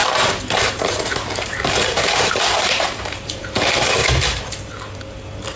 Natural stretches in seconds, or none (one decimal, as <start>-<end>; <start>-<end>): 3.4-5.6